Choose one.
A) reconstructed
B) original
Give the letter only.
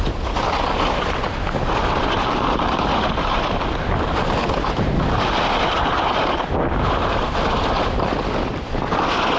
B